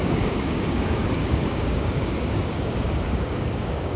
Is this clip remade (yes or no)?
yes